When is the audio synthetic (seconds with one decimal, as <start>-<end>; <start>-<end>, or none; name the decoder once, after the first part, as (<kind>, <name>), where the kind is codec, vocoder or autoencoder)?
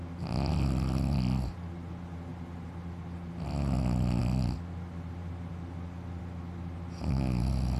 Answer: none